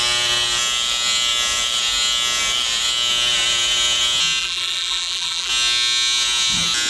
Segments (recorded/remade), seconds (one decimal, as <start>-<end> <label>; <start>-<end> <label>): 0.0-4.4 recorded; 4.4-5.5 remade; 5.5-6.9 recorded